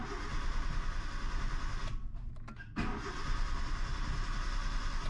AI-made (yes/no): no